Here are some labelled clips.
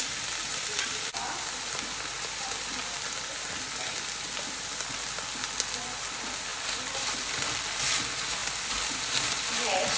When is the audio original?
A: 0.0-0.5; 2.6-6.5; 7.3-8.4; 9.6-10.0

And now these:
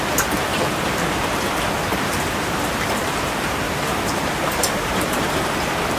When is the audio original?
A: 0.0-0.5; 1.3-1.9; 5.3-6.0

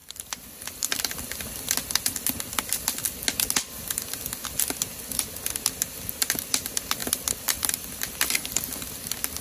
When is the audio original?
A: 1.7-7.0; 8.5-9.4

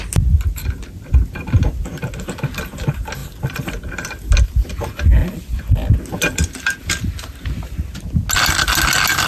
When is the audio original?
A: 0.0-9.3

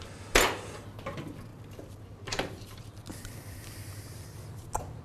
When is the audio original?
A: 0.0-1.5; 2.8-5.0

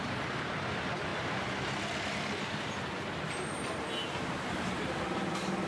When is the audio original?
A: 1.1-4.5

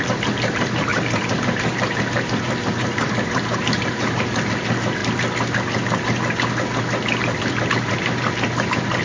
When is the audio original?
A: 5.0-7.7

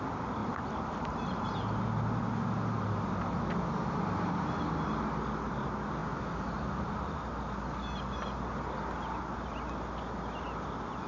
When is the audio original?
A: 0.0-0.4; 1.2-11.1